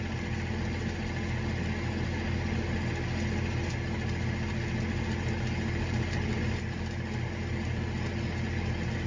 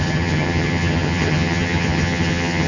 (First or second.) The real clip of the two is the first